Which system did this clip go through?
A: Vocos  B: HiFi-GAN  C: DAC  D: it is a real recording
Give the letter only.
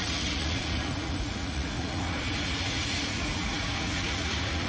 A